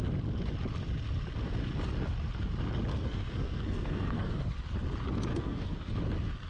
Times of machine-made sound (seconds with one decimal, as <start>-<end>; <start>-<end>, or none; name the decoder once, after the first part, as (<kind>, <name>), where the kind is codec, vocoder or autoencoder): 2.9-4.4 (codec, SNAC); 5.3-5.9